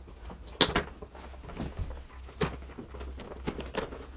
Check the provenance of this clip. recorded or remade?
recorded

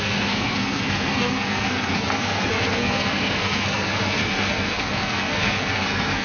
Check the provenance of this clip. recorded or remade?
remade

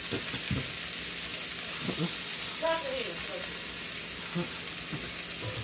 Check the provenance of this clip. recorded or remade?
recorded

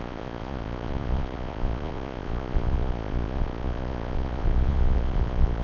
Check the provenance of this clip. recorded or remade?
remade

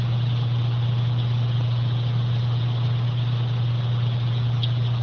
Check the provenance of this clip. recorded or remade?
recorded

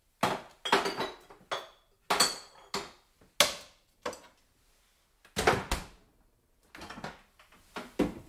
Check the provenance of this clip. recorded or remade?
recorded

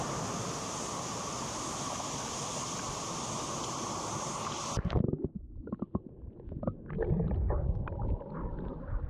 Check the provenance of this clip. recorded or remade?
recorded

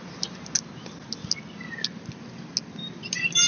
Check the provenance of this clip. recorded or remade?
recorded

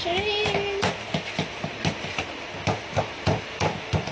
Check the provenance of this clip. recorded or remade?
recorded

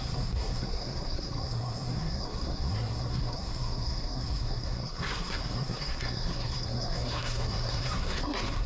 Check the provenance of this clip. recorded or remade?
remade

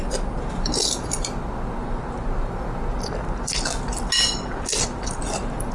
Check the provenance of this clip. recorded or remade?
recorded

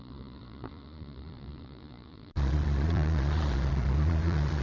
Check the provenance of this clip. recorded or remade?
remade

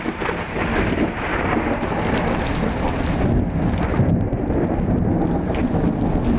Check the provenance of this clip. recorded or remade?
recorded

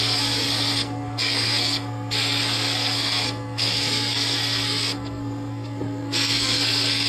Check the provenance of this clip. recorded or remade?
remade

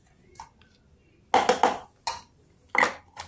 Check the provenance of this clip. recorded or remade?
recorded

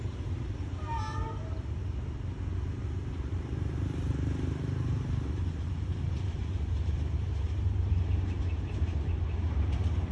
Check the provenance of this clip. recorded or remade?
remade